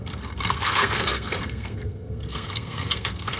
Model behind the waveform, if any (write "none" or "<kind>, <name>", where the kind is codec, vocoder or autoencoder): codec, SNAC